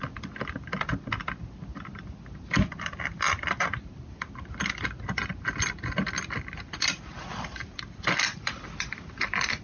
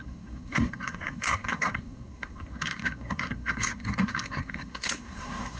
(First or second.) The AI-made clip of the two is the second